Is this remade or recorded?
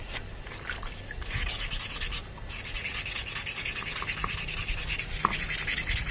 recorded